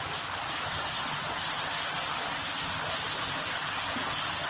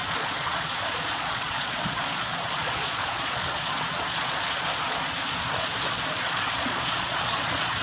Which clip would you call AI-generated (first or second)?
second